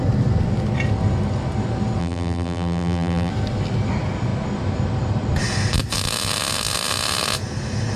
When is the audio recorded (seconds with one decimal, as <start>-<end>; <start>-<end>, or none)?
0.0-2.0; 3.3-8.0